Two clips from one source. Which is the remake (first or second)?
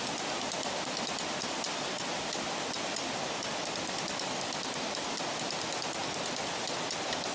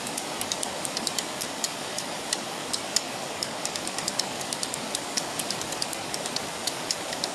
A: second